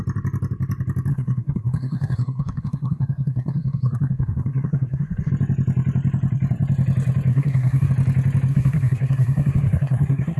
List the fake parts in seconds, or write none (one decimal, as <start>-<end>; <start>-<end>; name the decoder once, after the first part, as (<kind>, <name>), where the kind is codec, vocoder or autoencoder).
1.1-5.3 (codec, SNAC); 7.3-7.9; 8.5-10.4